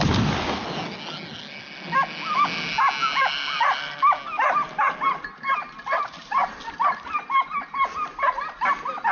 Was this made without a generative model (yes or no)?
yes